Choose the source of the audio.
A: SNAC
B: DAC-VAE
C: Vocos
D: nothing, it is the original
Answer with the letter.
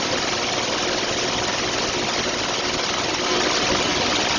D